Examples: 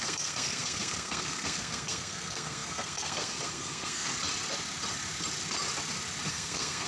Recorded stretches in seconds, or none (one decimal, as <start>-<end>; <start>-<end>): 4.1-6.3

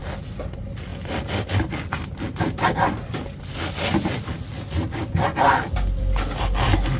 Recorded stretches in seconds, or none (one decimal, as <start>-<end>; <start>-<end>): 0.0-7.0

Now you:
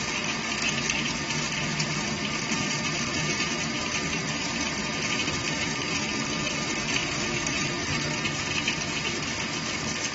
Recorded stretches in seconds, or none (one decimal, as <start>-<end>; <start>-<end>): 0.0-10.1